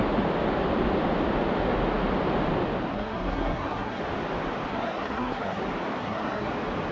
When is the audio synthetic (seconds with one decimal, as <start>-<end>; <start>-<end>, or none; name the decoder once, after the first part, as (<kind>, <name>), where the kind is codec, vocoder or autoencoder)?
2.9-4.0 (codec, SNAC); 4.7-5.6; 6.0-6.5